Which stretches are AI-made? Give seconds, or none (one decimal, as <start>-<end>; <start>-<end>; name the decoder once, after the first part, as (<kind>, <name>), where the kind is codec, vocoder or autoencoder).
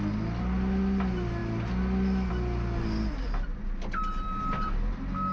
none